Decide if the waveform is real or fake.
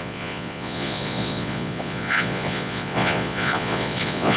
fake